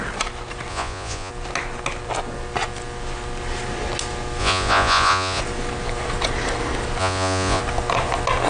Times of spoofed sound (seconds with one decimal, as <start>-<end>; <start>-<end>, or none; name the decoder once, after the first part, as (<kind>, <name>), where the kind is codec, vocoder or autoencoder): 0.7-1.3 (vocoder, Vocos); 4.4-5.4; 7.0-7.6